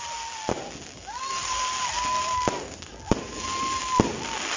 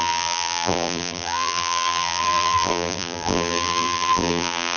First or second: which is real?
first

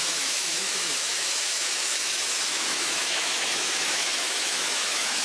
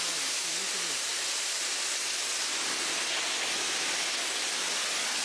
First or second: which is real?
second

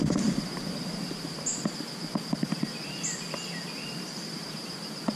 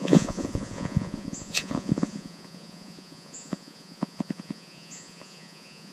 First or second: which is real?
first